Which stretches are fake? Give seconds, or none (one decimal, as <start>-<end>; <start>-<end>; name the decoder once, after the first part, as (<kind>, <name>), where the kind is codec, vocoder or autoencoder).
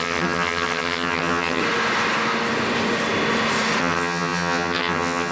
0.0-1.6 (vocoder, HiFi-GAN); 3.8-5.3